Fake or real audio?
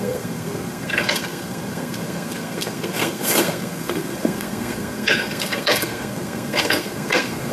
fake